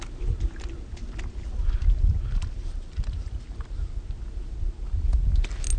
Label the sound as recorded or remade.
recorded